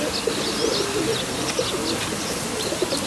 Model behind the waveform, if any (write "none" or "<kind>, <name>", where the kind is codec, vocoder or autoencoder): none